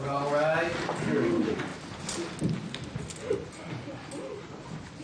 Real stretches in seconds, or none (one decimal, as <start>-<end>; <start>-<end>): 0.0-5.0